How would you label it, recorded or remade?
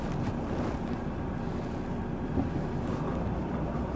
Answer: recorded